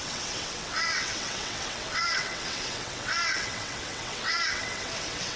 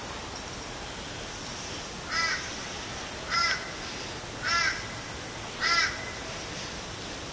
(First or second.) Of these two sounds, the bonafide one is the second